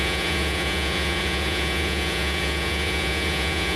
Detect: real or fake fake